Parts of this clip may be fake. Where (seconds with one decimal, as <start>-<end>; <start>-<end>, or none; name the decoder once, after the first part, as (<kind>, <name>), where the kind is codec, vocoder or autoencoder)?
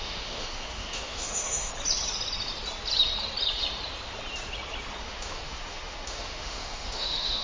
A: 0.0-1.7 (autoencoder, DAC-VAE); 5.0-7.4